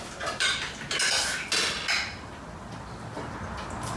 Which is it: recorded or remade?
recorded